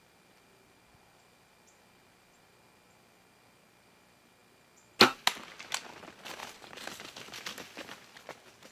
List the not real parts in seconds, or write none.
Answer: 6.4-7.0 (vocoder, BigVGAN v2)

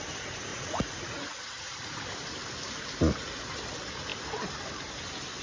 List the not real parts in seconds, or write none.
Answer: 0.5-2.0 (vocoder, Vocos)

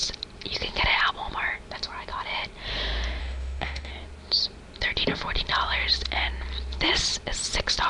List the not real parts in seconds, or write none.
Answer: 3.2-3.9 (autoencoder, DAC-VAE)

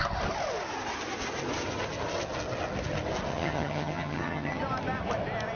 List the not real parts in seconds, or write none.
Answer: 3.3-4.6 (vocoder, HiFi-GAN)

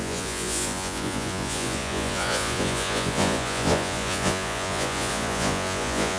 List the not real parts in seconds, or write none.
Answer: 0.0-6.2 (vocoder, Vocos)